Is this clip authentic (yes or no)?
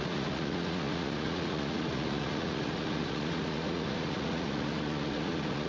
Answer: no